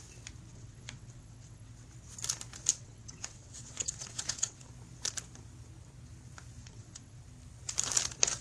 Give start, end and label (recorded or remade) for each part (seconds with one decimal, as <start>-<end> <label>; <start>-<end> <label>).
0.0-0.5 recorded; 0.5-1.7 remade; 1.7-2.7 recorded; 2.7-4.7 remade; 4.7-6.6 recorded; 6.6-7.2 remade; 7.2-8.4 recorded